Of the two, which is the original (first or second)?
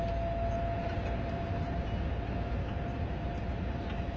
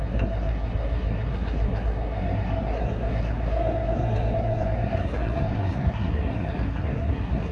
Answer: first